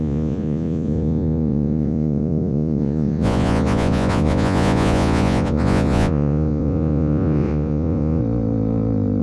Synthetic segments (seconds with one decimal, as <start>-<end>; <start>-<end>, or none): 0.0-8.2